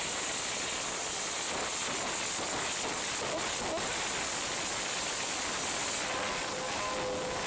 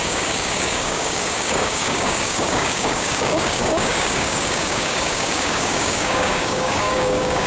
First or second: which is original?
first